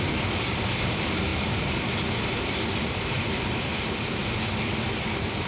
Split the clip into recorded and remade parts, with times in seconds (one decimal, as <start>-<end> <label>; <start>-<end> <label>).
0.0-1.3 remade; 1.3-2.3 recorded; 2.3-5.5 remade